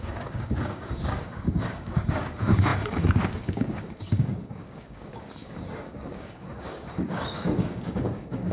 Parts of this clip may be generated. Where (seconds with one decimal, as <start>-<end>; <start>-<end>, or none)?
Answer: 0.0-8.5